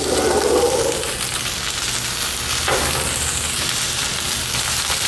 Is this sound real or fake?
real